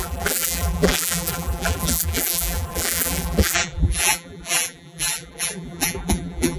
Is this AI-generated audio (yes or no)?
yes